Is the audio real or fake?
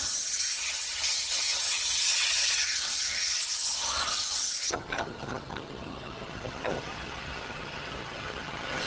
fake